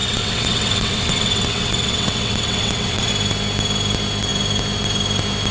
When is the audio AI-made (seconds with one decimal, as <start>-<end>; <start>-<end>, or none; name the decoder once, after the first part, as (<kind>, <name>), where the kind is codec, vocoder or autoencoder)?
0.0-3.1 (vocoder, WaveNeXt)